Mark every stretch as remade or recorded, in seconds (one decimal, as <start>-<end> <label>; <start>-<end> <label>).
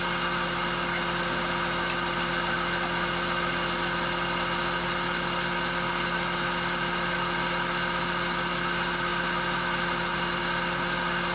0.0-11.3 recorded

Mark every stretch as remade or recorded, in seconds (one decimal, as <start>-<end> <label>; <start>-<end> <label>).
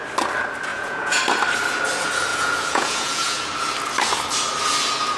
0.0-0.7 recorded; 0.7-1.2 remade; 1.2-2.3 recorded; 2.3-3.4 remade; 3.4-5.2 recorded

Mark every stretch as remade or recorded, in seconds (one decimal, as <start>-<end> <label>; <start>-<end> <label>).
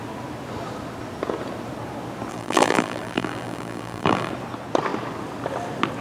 0.0-2.3 recorded; 2.3-4.3 remade; 4.3-6.0 recorded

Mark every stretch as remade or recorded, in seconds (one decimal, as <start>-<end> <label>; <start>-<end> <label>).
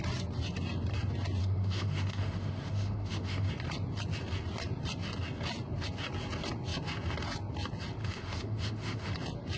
0.0-1.4 recorded; 1.4-3.5 remade; 3.5-8.0 recorded; 8.0-9.1 remade; 9.1-9.6 recorded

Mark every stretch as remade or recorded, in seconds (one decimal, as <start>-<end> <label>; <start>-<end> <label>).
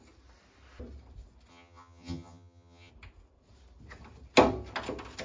0.0-1.5 recorded; 1.5-2.9 remade; 2.9-5.2 recorded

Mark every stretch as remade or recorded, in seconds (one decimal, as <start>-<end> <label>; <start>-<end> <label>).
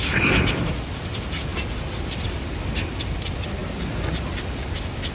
0.0-5.1 recorded